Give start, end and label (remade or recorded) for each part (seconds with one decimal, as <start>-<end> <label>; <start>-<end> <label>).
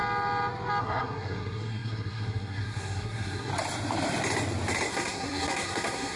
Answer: 0.0-0.8 recorded; 0.8-3.5 remade; 3.5-4.9 recorded; 4.9-6.2 remade